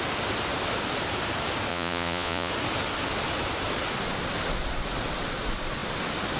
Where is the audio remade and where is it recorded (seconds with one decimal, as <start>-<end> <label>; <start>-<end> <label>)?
0.0-1.7 recorded; 1.7-2.5 remade; 2.5-6.4 recorded